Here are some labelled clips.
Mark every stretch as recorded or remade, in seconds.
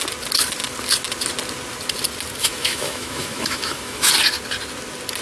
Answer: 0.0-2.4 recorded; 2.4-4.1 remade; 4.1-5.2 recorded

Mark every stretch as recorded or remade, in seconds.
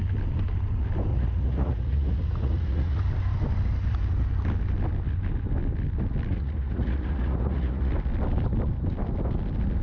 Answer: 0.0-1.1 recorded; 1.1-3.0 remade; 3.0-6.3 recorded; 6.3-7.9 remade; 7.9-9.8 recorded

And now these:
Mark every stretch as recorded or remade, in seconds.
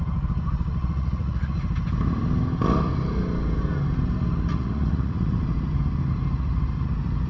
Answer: 0.0-0.8 recorded; 0.8-1.5 remade; 1.5-4.5 recorded; 4.5-5.4 remade; 5.4-7.3 recorded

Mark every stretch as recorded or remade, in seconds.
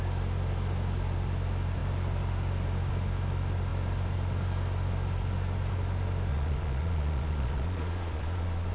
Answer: 0.0-6.3 recorded; 6.3-8.7 remade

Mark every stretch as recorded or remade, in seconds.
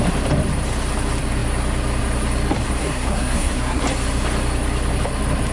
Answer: 0.0-2.8 recorded; 2.8-3.8 remade; 3.8-5.5 recorded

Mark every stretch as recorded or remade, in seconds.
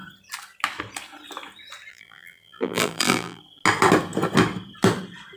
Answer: 0.0-1.9 recorded; 1.9-3.4 remade; 3.4-5.4 recorded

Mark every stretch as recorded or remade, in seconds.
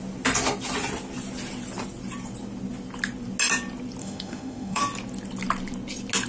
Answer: 0.0-4.0 recorded; 4.0-4.8 remade; 4.8-6.3 recorded